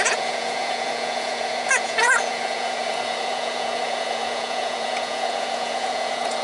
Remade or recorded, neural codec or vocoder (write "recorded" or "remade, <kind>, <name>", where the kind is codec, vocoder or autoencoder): remade, vocoder, Vocos